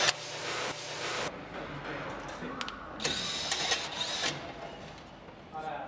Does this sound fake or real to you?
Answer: real